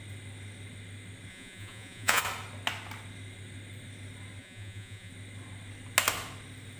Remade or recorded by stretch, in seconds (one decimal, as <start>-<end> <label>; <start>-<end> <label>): 0.0-1.3 recorded; 1.3-2.2 remade; 2.2-4.4 recorded; 4.4-5.1 remade; 5.1-6.8 recorded